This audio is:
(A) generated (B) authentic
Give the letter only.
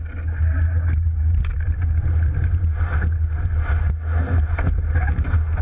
B